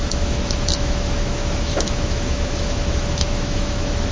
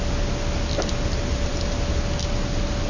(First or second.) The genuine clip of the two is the second